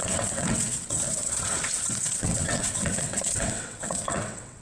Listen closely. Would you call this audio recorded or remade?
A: remade